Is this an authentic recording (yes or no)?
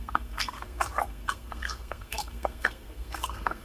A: no